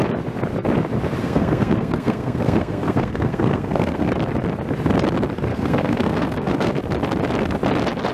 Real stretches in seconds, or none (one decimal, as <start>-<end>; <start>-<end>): 0.0-1.2; 4.1-5.5; 6.8-8.1